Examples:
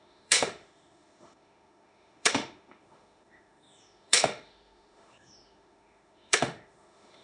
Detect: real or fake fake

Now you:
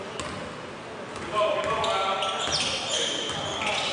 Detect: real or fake real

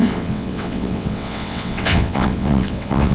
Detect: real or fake fake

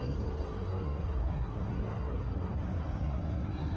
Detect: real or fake fake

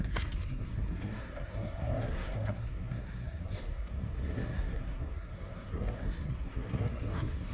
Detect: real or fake fake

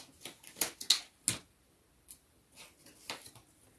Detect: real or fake real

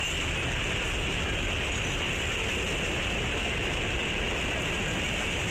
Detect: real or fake real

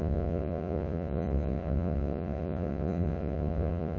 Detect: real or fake fake